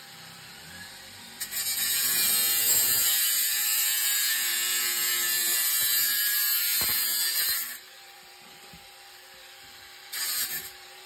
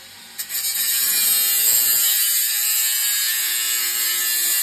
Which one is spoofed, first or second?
first